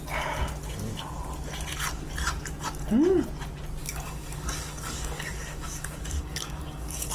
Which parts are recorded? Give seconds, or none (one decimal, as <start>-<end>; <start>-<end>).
0.0-3.8